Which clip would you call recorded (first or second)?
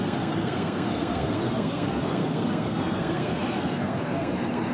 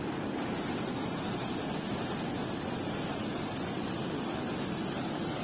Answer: second